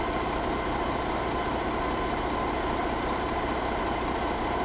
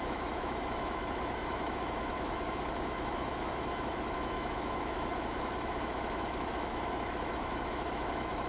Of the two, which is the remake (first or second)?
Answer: second